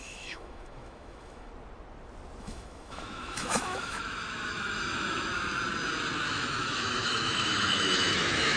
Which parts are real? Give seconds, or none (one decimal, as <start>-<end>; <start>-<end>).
1.5-2.4; 5.3-6.3